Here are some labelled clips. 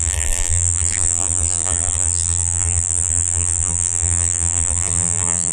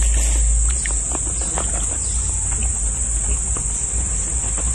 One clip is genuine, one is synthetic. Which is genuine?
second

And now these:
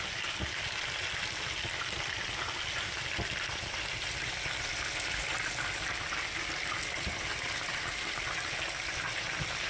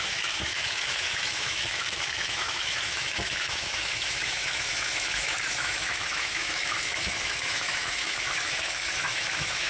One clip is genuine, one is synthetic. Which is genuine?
first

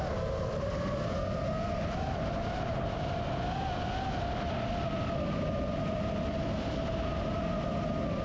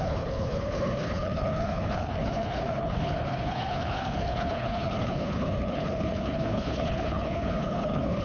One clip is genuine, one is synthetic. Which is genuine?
first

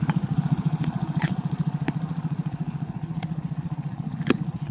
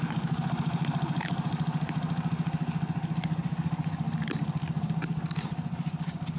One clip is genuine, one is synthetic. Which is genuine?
second